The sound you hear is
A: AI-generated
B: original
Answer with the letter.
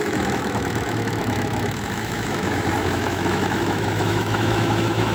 A